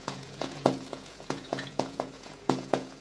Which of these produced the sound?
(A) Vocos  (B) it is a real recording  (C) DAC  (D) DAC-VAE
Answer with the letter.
A